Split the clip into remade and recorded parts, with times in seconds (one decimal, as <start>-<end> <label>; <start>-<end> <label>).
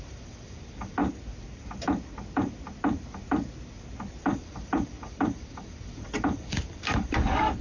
0.0-1.0 remade; 1.0-4.2 recorded; 4.2-7.6 remade